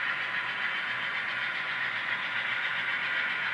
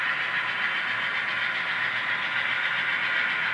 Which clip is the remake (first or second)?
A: first